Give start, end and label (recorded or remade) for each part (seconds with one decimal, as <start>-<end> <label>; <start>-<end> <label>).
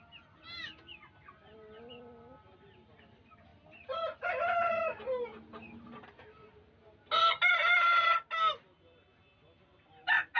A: 0.0-10.4 recorded